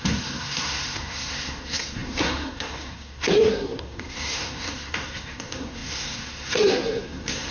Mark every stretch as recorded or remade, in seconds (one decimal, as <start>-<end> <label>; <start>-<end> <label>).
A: 0.0-7.5 remade